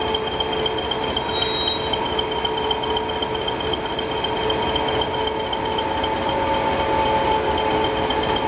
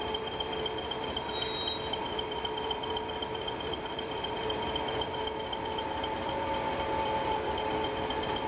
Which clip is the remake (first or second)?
second